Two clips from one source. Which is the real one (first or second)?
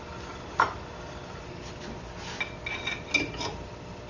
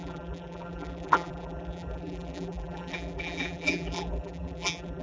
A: first